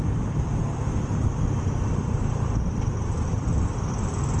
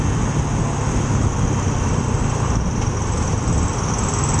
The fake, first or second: first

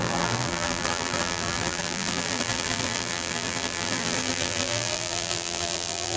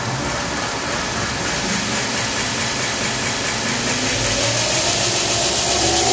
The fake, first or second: first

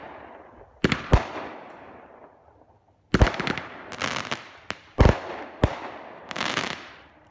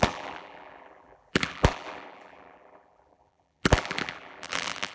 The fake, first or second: second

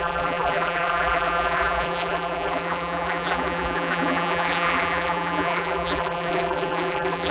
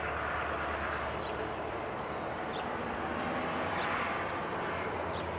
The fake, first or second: first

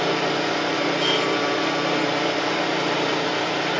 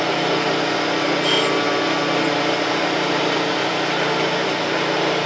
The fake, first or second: first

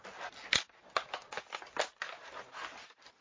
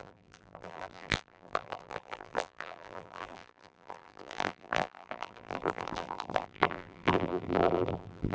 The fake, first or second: second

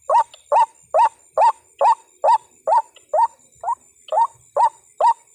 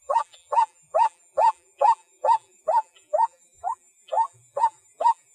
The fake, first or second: second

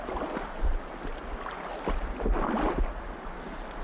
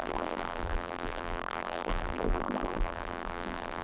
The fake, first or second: second